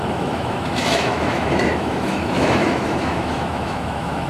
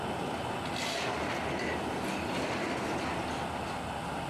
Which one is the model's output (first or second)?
first